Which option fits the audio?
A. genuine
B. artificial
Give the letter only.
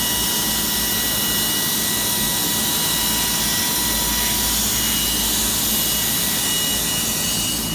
A